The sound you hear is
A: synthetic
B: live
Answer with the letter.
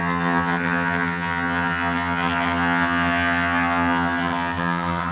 A